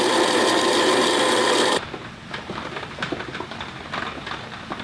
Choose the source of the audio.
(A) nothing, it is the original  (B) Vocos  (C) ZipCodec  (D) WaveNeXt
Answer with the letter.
A